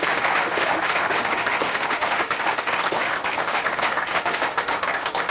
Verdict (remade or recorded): remade